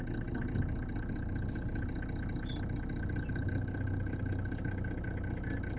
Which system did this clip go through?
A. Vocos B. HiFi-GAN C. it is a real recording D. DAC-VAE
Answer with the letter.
C